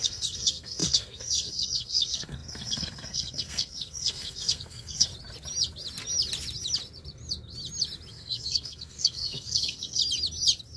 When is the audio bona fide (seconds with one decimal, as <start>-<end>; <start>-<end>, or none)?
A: 5.1-8.1; 10.0-10.8